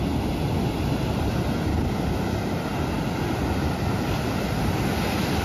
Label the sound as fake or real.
real